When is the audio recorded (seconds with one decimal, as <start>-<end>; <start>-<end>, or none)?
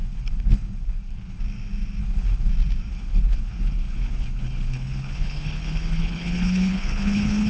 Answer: 1.4-2.0; 2.5-2.9